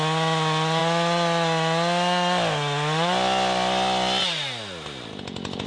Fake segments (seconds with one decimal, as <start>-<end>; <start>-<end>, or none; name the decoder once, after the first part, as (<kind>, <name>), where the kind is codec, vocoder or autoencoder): none